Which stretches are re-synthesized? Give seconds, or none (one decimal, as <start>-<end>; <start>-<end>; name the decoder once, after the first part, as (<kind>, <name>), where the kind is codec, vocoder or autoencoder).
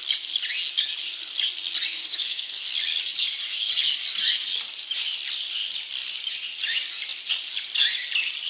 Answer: 2.0-2.7 (codec, SNAC)